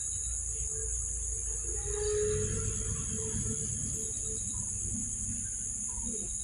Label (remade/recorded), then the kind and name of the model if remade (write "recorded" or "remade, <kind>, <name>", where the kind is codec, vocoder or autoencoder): recorded